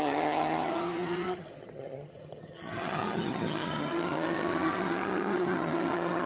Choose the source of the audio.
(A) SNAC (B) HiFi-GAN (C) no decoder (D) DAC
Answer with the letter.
B